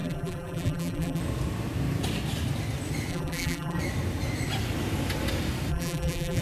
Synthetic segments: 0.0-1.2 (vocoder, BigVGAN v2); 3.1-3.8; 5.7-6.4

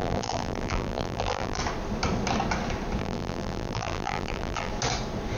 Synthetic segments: 0.0-1.6 (vocoder, BigVGAN v2); 3.0-4.7

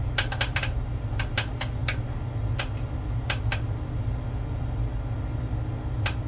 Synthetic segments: none

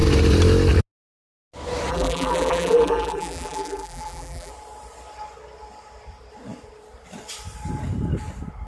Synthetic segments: 1.9-4.5 (vocoder, BigVGAN v2)

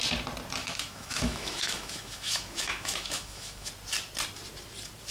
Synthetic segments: 0.6-3.7 (autoencoder, DAC-VAE)

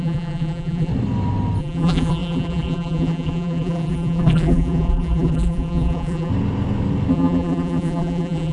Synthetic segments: 0.0-0.9 (vocoder, BigVGAN v2); 1.6-6.3; 7.1-8.5